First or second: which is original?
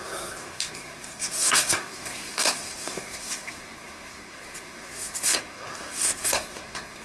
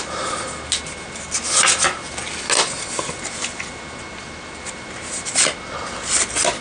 second